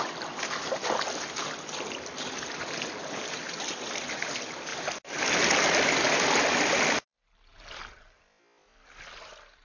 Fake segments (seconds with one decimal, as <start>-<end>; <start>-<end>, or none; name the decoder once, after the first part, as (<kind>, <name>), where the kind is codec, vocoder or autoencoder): none